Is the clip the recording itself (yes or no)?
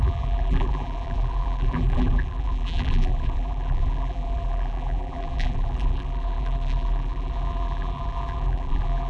no